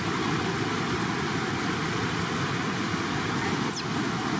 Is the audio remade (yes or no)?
no